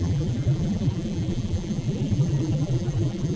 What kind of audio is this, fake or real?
fake